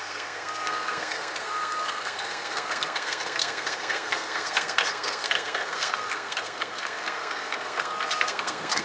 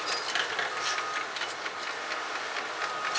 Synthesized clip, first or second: first